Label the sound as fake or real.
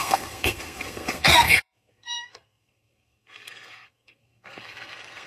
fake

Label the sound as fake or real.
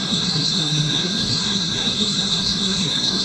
fake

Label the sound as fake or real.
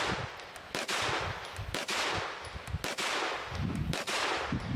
real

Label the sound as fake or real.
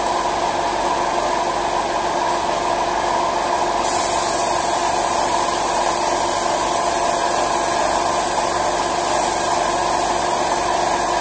real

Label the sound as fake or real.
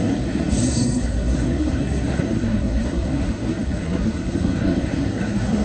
fake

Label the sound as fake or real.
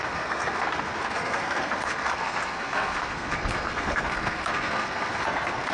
fake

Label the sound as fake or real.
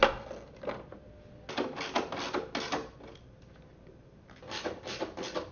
real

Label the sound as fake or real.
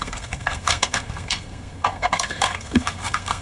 fake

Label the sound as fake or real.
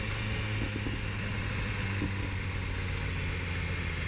real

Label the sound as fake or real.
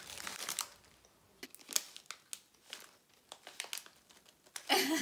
real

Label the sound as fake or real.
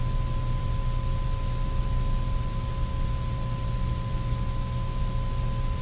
real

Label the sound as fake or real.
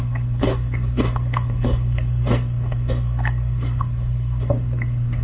fake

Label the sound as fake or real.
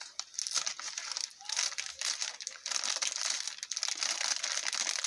real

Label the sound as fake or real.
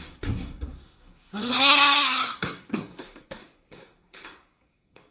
fake